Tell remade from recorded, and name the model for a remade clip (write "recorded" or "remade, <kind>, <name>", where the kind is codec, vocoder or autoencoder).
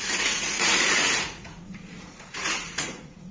remade, vocoder, Vocos